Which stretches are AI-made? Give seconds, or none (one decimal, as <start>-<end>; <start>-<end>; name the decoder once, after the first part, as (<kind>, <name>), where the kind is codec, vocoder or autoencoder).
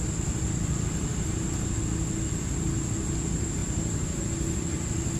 1.1-1.8 (vocoder, BigVGAN v2); 3.6-4.2